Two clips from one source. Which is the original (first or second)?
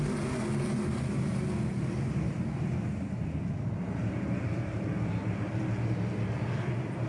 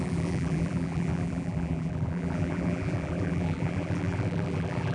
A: first